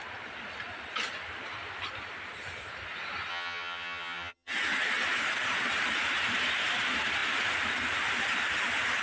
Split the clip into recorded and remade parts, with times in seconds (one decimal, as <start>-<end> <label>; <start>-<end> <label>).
0.0-3.3 recorded; 3.3-4.5 remade; 4.5-9.0 recorded